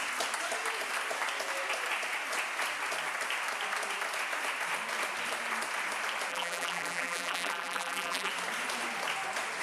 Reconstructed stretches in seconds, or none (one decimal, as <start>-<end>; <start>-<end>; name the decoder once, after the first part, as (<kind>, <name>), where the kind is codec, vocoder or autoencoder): 6.3-8.3 (vocoder, BigVGAN v2)